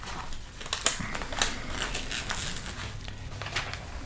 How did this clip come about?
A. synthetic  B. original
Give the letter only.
B